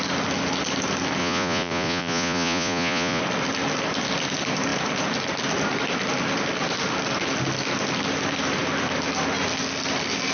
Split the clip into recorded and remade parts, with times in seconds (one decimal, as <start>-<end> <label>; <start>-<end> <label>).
0.0-1.2 recorded; 1.2-3.2 remade; 3.2-10.3 recorded